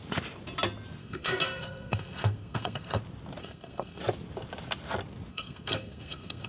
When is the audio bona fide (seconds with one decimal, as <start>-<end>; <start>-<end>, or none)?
0.0-1.0; 3.0-3.4; 4.0-5.3